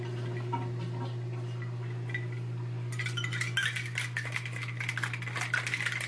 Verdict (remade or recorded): recorded